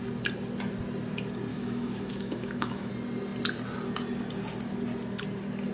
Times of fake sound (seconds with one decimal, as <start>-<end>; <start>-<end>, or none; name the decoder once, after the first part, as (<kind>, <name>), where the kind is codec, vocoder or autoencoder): 1.5-2.9 (autoencoder, DAC-VAE)